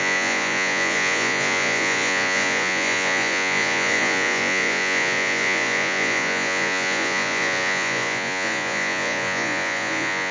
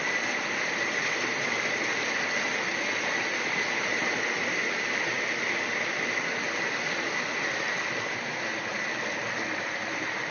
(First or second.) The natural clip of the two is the second